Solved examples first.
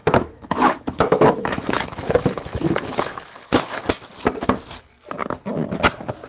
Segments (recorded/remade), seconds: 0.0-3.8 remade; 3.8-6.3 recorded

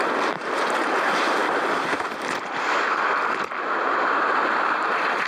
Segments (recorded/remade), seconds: 0.0-1.4 remade; 1.4-4.6 recorded; 4.6-5.3 remade

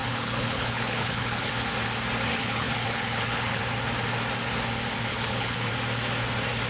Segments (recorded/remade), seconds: 0.0-1.5 remade; 1.5-2.3 recorded; 2.3-3.6 remade; 3.6-5.1 recorded; 5.1-5.7 remade; 5.7-6.7 recorded

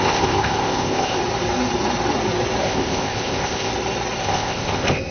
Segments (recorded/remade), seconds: 0.0-1.2 remade; 1.2-2.6 recorded; 2.6-3.7 remade; 3.7-4.2 recorded; 4.2-5.1 remade

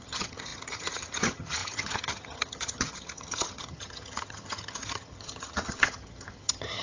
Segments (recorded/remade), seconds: 0.0-6.8 remade